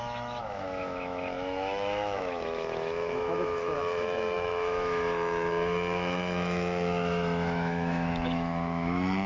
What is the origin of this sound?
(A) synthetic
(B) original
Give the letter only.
A